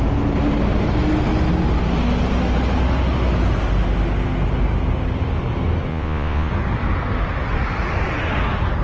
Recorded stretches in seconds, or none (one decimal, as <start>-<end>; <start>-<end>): 0.0-5.9; 6.5-8.8